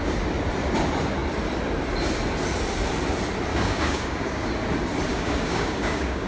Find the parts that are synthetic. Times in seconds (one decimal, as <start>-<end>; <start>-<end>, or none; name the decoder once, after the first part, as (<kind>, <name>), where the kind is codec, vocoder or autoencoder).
3.5-4.5 (codec, DAC); 5.1-6.3